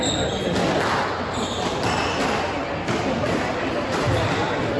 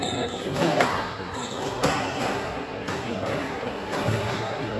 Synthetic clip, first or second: second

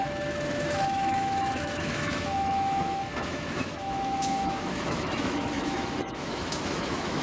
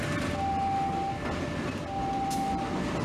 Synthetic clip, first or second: first